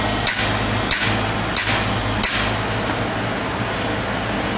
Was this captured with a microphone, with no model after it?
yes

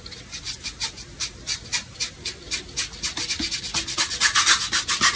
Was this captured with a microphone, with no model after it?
yes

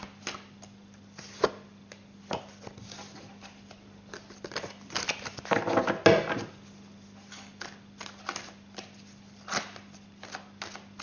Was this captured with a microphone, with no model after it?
yes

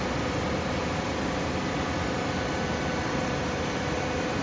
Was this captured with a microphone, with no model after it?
yes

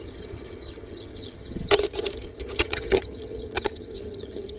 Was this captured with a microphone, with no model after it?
no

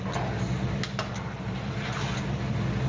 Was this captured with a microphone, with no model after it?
yes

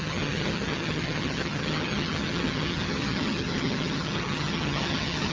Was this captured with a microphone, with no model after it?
no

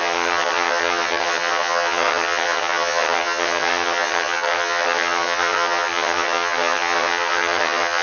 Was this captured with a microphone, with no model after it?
no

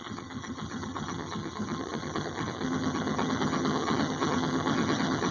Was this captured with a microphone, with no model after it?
no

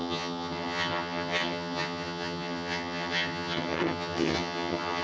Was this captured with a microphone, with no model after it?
no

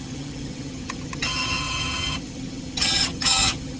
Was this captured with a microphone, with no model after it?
no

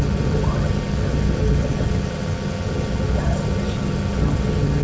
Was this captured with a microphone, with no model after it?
no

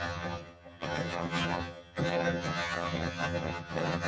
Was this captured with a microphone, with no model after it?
no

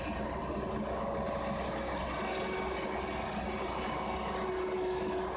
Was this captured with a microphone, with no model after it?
yes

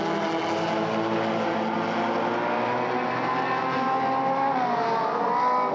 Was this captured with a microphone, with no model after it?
yes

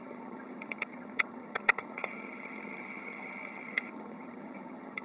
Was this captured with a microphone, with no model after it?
no